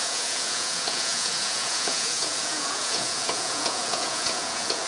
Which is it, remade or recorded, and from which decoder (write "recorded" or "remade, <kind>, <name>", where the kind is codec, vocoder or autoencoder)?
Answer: remade, vocoder, Vocos